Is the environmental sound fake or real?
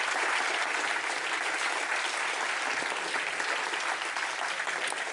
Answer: real